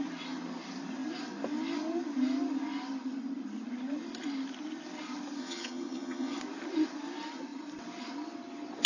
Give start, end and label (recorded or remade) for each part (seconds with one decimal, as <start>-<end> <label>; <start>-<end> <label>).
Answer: 0.0-5.4 recorded; 5.4-6.4 remade; 6.4-8.9 recorded